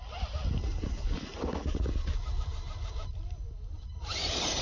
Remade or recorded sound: recorded